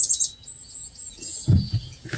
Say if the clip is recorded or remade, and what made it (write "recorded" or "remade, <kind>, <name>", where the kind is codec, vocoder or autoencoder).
remade, vocoder, Vocos